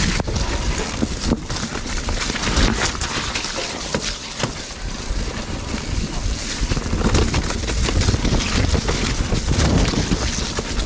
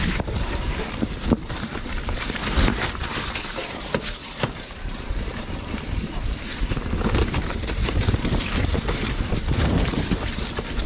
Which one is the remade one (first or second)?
second